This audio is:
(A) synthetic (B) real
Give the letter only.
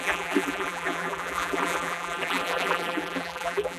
A